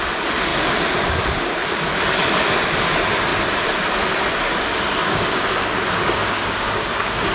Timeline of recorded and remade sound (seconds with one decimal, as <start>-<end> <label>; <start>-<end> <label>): 0.0-5.0 recorded; 5.0-7.3 remade